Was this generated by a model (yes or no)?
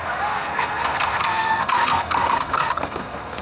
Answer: yes